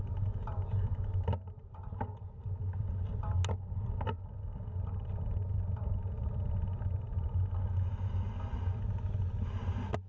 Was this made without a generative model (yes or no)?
yes